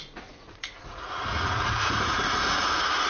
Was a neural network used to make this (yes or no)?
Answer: yes